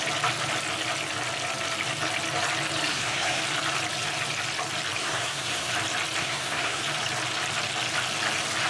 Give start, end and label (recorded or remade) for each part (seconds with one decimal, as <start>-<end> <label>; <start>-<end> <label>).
0.0-2.9 recorded; 2.9-3.4 remade; 3.4-5.0 recorded; 5.0-5.7 remade; 5.7-6.2 recorded; 6.2-6.8 remade; 6.8-8.7 recorded